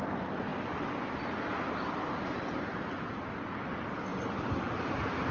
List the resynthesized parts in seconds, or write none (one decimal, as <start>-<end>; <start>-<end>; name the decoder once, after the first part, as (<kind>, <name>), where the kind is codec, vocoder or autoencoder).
none